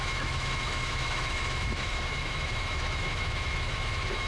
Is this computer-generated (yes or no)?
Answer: yes